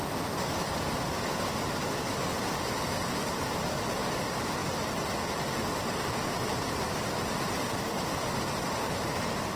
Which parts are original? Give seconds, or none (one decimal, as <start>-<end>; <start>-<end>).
0.0-9.6

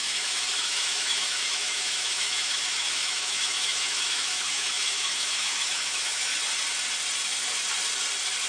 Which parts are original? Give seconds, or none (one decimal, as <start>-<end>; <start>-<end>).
6.3-8.5

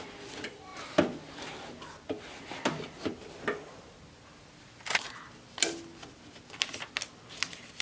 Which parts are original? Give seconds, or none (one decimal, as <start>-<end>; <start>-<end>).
0.0-7.8

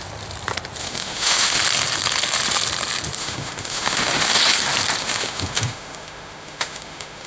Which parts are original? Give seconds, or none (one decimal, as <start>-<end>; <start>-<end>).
0.0-0.8; 1.6-3.2; 4.4-5.0